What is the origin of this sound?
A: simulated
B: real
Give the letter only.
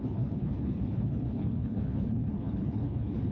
A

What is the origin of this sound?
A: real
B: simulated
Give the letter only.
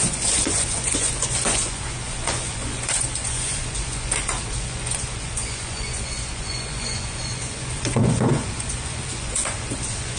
B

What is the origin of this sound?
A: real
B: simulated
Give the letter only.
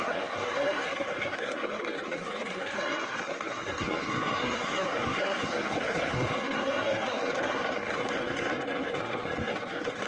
B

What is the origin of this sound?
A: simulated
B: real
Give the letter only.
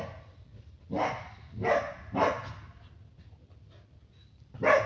B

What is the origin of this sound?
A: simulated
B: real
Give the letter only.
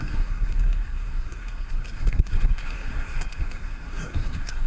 A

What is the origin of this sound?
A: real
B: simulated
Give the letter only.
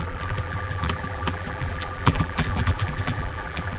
B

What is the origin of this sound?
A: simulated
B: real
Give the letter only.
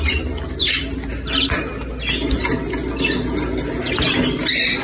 B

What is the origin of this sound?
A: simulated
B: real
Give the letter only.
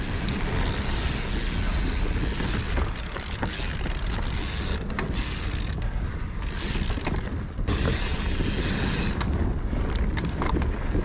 B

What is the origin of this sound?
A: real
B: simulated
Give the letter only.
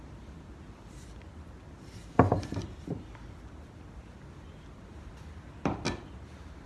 A